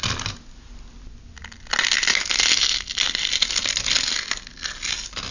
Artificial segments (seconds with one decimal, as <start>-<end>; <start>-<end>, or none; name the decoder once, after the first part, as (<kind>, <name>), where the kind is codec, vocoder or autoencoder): none